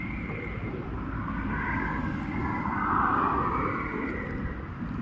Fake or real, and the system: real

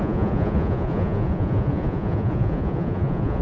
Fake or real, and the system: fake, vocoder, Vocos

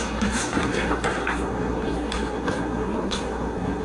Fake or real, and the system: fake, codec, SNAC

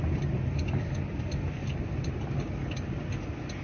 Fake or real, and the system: real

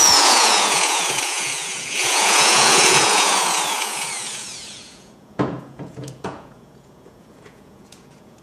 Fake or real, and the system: fake, vocoder, Vocos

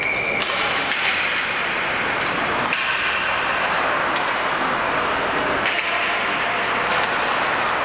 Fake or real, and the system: real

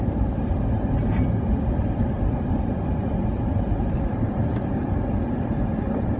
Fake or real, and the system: fake, vocoder, BigVGAN v2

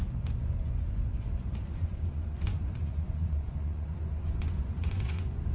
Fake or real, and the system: fake, vocoder, Vocos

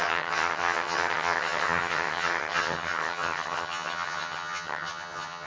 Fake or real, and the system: fake, vocoder, HiFi-GAN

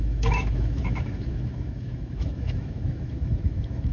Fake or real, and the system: fake, autoencoder, DAC-VAE